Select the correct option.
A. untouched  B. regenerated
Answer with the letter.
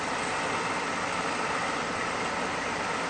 A